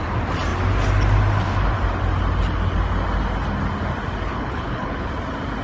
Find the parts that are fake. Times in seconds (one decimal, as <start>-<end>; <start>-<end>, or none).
4.3-5.1